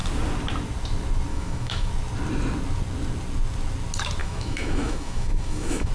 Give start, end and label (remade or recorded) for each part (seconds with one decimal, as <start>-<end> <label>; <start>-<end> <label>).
0.0-1.3 recorded; 1.3-1.9 remade; 1.9-4.2 recorded; 4.2-5.9 remade

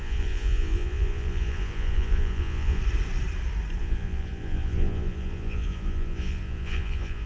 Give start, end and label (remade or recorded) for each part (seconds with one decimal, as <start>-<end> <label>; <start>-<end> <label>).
0.0-2.8 remade; 2.8-3.8 recorded; 3.8-7.3 remade

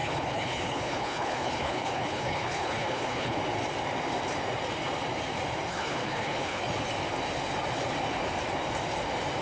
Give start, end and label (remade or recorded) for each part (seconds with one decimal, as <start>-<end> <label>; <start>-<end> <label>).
0.0-3.4 remade; 3.4-5.7 recorded; 5.7-6.6 remade; 6.6-9.4 recorded

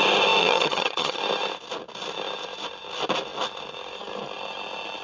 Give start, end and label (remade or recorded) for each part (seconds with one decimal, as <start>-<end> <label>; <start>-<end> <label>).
0.0-0.4 recorded; 0.4-1.2 remade; 1.2-5.0 recorded

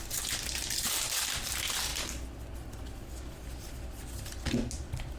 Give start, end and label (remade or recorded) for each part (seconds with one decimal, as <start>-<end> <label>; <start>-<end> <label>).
0.0-5.2 recorded